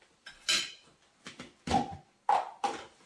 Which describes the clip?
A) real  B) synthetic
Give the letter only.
A